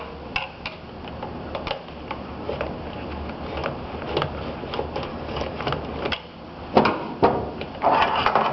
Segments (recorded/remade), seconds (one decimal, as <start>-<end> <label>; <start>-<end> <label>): 0.0-5.1 recorded; 5.1-5.6 remade; 5.6-8.5 recorded